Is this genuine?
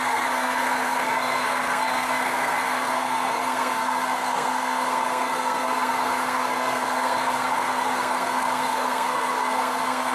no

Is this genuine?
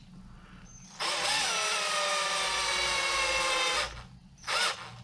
yes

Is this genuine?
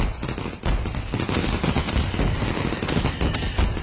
yes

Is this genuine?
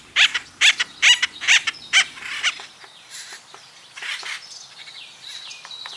no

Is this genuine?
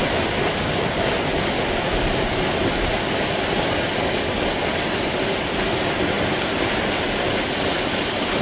yes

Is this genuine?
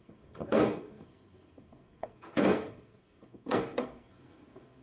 no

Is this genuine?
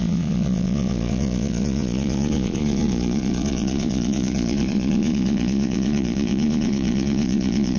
no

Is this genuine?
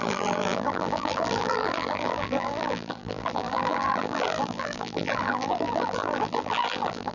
no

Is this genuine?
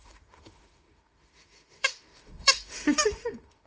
no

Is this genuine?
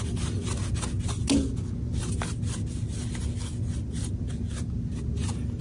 yes